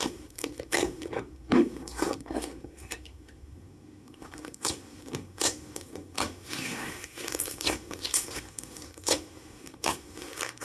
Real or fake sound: fake